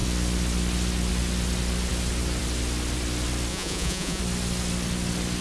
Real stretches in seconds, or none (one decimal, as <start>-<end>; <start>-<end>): 0.0-3.5; 4.2-5.4